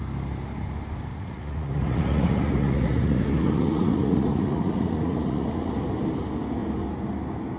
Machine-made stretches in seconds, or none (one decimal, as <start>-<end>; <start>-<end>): 1.1-5.7